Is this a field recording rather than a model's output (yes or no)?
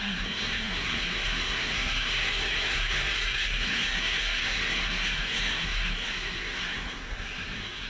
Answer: no